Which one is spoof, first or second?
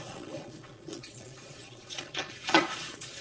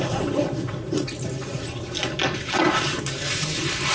first